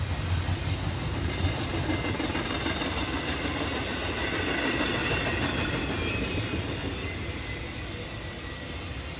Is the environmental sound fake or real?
real